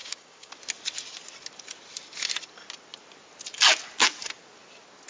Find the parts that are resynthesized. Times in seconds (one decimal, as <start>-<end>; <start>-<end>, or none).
0.0-0.5